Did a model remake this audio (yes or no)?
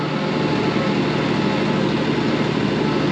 no